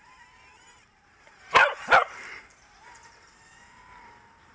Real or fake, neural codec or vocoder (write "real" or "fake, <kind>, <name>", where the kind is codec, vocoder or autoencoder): fake, vocoder, BigVGAN v2